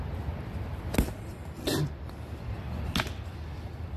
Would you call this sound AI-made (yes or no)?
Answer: no